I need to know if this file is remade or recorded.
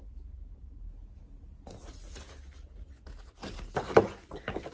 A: recorded